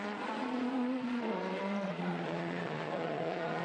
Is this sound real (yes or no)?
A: no